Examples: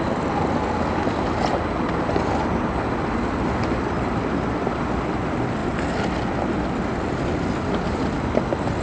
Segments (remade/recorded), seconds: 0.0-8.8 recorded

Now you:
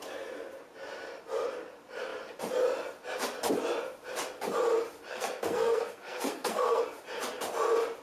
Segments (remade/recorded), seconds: 0.0-5.1 recorded; 5.1-6.8 remade; 6.8-8.0 recorded